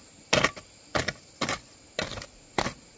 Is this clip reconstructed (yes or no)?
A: no